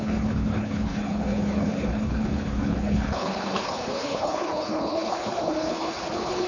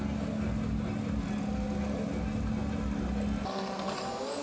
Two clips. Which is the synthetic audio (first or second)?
first